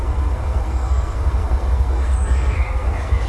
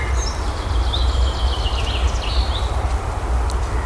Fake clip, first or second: first